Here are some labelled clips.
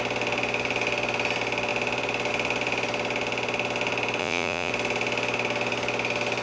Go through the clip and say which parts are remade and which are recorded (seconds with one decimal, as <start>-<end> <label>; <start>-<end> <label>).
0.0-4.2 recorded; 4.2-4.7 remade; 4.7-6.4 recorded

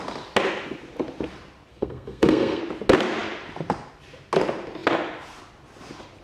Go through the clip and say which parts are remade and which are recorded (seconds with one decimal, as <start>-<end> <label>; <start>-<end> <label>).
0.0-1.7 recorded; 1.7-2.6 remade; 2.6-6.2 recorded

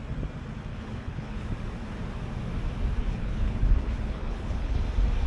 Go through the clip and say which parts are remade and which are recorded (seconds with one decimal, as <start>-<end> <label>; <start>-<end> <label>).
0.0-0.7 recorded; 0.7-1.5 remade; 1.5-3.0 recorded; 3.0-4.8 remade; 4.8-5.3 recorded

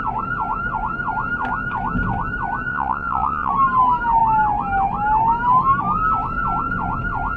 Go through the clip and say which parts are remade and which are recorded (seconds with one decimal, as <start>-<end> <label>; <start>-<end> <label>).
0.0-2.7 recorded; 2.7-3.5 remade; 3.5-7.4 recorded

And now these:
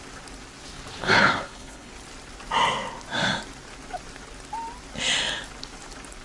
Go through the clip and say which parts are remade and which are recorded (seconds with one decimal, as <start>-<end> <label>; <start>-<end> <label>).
0.0-1.0 recorded; 1.0-1.9 remade; 1.9-6.2 recorded